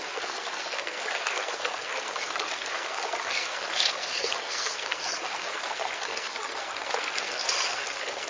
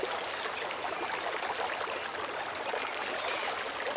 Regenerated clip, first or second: first